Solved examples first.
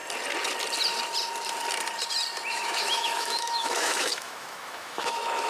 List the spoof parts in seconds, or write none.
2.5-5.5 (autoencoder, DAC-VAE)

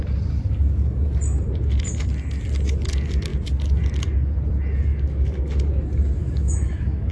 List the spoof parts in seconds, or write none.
4.9-5.5 (autoencoder, DAC-VAE); 6.2-7.1

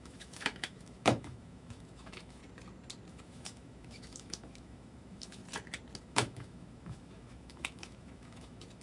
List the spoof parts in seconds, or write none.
0.0-2.4 (autoencoder, DAC-VAE); 3.1-5.4; 6.0-8.8

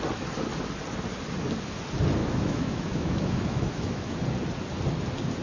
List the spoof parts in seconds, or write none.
2.2-4.2 (autoencoder, DAC-VAE)

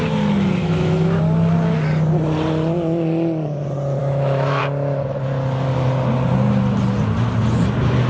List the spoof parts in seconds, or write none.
0.6-1.2 (autoencoder, DAC-VAE); 4.0-4.6

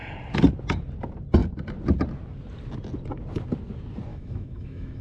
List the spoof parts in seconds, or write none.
4.1-5.0 (autoencoder, DAC-VAE)